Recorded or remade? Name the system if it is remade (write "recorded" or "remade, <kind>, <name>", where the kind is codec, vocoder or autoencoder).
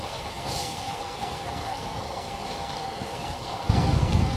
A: remade, codec, SNAC